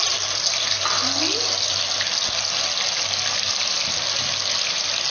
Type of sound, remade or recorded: recorded